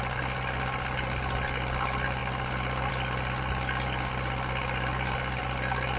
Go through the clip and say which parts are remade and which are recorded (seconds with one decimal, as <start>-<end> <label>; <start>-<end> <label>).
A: 0.0-6.0 recorded